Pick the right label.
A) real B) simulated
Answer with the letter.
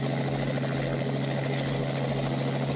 A